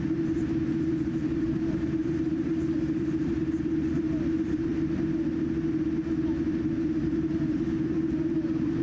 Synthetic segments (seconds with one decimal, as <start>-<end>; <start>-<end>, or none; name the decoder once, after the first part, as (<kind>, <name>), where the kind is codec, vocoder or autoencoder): 0.0-4.7 (vocoder, BigVGAN v2); 6.6-8.8